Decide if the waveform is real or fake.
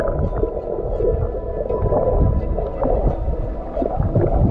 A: real